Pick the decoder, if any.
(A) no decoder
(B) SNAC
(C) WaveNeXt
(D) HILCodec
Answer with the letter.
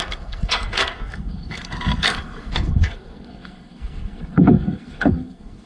B